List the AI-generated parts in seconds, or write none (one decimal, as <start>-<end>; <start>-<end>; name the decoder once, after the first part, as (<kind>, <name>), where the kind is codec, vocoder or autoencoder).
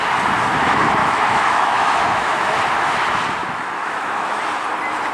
1.0-2.6 (autoencoder, DAC-VAE); 3.4-4.4